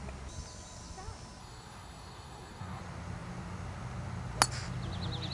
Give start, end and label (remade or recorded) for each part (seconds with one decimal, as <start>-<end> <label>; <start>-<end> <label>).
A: 0.0-1.4 recorded; 1.4-2.8 remade; 2.8-5.3 recorded